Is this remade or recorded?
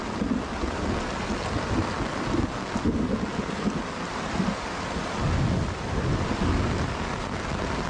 recorded